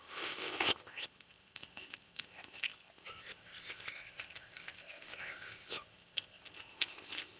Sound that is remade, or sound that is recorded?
remade